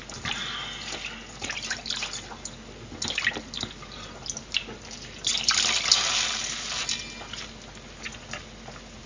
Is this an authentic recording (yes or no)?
yes